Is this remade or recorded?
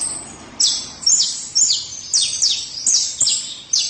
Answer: recorded